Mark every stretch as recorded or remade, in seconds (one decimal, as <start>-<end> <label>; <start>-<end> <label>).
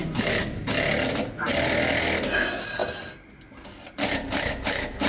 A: 0.0-5.1 recorded